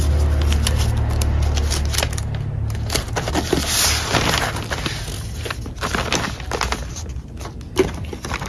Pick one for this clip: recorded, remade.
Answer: recorded